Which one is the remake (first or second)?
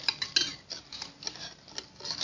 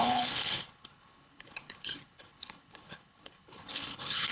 second